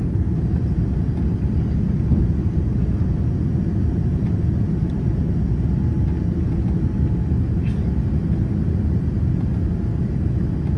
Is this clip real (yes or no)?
yes